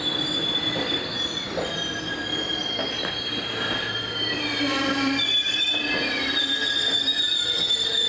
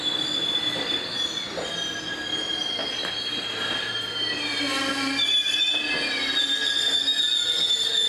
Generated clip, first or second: first